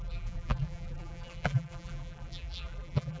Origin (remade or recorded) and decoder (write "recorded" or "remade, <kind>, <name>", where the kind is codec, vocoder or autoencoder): remade, vocoder, BigVGAN v2